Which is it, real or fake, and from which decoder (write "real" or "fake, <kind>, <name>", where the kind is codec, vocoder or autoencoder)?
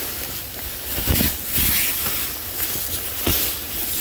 real